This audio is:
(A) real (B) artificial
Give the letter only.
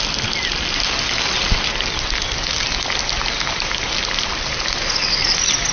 A